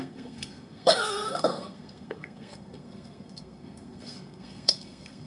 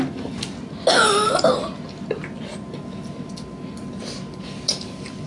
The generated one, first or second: first